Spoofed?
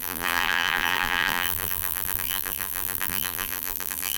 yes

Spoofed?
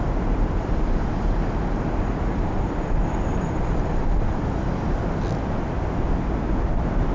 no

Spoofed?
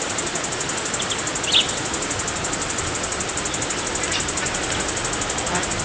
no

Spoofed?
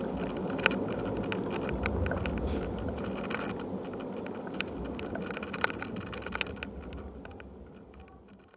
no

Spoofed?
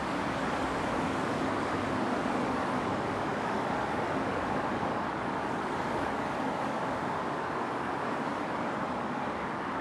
yes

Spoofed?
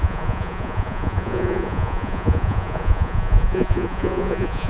yes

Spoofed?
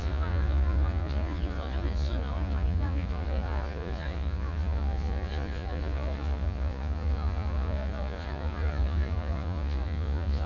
yes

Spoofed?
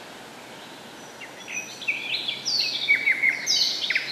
no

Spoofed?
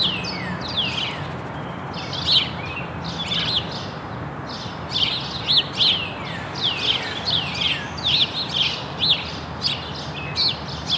no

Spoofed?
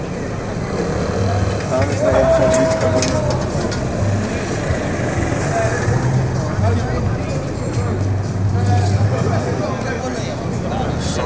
no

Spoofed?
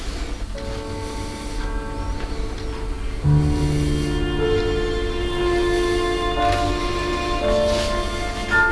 no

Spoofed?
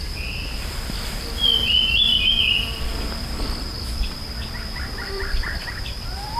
yes